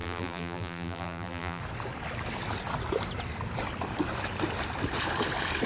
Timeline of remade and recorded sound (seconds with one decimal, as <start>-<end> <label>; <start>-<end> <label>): 0.0-1.6 remade; 1.6-5.7 recorded